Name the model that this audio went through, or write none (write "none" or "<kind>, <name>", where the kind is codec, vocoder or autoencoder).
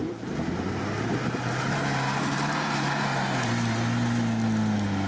none